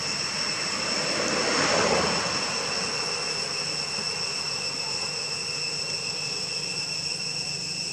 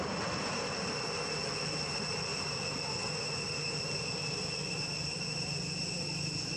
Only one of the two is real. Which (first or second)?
first